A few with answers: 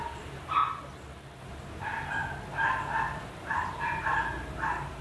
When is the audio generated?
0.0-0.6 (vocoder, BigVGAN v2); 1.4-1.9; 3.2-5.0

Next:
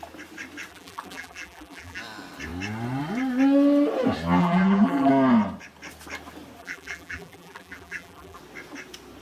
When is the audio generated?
0.7-2.0 (vocoder, BigVGAN v2); 4.4-5.1; 6.6-8.4

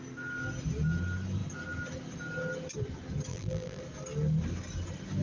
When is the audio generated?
3.3-3.8 (vocoder, BigVGAN v2)